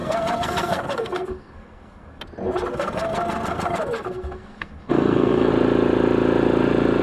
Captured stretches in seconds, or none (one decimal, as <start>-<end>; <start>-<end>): 2.2-2.7; 5.5-7.0